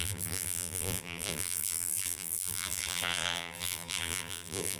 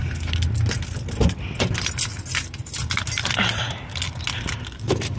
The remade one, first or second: first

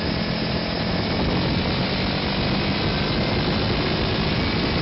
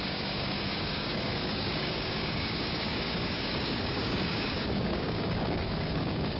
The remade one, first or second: second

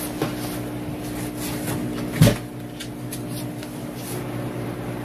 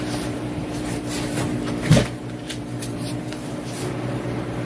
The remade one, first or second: second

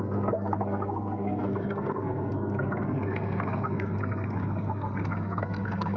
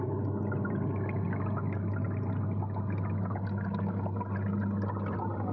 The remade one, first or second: first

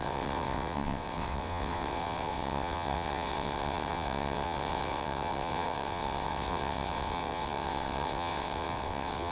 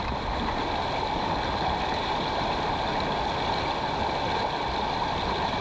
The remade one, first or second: first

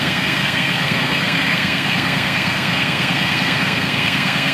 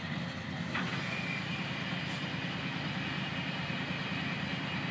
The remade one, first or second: first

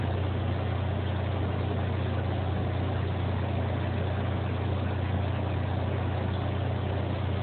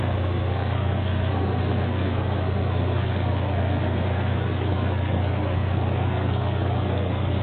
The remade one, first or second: second